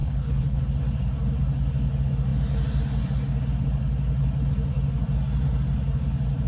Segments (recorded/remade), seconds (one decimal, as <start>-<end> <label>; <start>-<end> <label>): 0.0-0.6 remade; 0.6-6.5 recorded